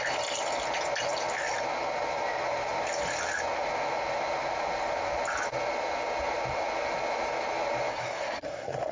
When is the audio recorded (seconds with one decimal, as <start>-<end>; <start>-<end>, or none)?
0.0-7.9